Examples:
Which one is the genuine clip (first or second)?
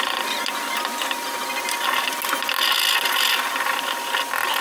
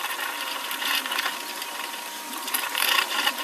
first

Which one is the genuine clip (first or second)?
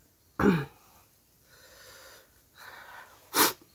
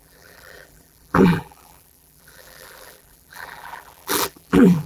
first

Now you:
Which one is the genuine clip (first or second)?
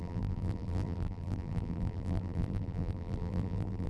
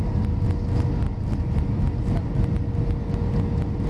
second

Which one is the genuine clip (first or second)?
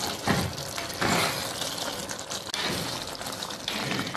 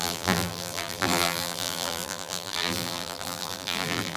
first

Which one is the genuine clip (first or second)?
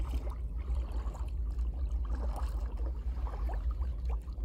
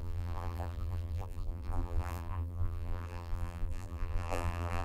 first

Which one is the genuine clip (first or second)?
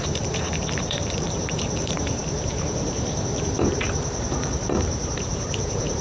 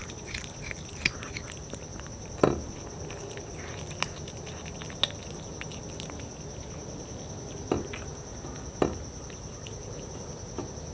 second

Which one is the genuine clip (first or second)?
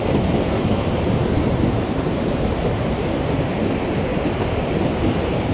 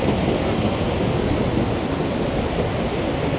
second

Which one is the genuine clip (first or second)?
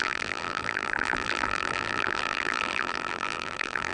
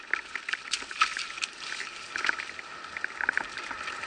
second